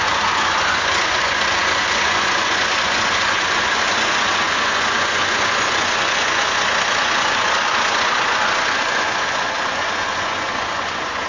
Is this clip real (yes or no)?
no